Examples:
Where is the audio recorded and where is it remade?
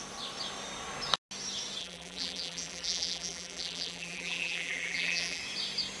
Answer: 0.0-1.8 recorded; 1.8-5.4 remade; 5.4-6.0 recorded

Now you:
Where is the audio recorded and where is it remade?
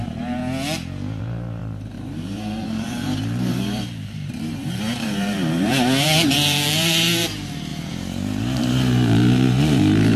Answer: 0.0-0.4 remade; 0.4-1.2 recorded; 1.2-10.2 remade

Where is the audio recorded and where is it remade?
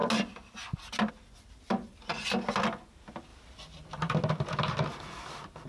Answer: 0.0-5.7 recorded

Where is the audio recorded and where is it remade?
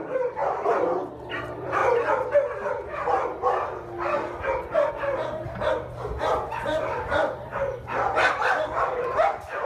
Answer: 0.0-0.4 remade; 0.4-1.3 recorded; 1.3-1.8 remade; 1.8-4.9 recorded; 4.9-7.5 remade; 7.5-8.3 recorded; 8.3-9.7 remade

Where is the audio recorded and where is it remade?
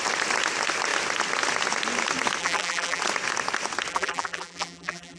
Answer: 0.0-2.4 recorded; 2.4-3.0 remade; 3.0-3.9 recorded; 3.9-5.2 remade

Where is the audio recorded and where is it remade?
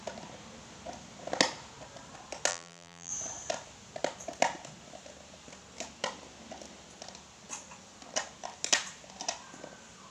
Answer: 0.0-2.5 recorded; 2.5-3.1 remade; 3.1-10.1 recorded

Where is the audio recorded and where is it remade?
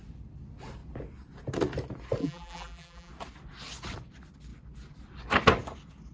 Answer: 0.0-2.2 recorded; 2.2-3.1 remade; 3.1-6.1 recorded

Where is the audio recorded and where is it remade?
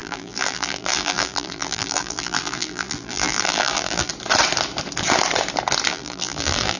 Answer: 0.0-4.1 remade; 4.1-5.9 recorded; 5.9-6.8 remade